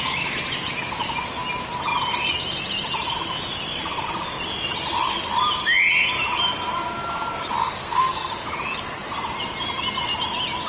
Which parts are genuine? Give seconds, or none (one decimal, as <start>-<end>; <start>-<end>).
0.0-7.6; 8.3-10.7